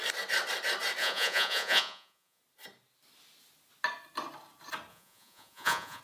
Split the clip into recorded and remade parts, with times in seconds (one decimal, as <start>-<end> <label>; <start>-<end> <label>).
0.0-1.0 recorded; 1.0-2.4 remade; 2.4-4.9 recorded; 4.9-6.0 remade